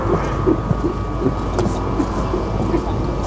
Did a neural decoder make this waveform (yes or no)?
no